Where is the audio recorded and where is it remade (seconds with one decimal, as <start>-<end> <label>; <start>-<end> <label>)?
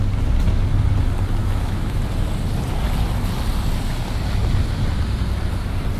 0.0-1.4 recorded; 1.4-2.0 remade; 2.0-6.0 recorded